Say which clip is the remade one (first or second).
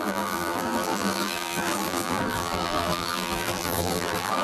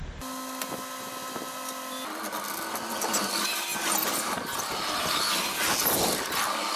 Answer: first